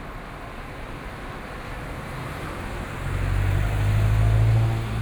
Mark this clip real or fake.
real